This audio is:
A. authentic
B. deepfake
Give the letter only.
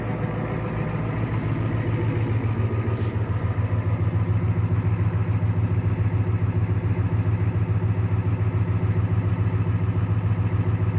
A